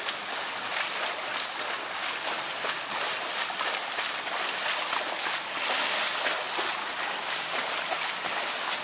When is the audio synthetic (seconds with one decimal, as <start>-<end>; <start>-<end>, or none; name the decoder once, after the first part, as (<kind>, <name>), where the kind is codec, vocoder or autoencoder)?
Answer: none